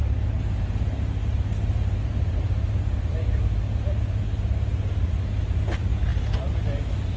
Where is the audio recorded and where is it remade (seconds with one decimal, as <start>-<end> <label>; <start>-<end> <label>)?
0.0-7.2 recorded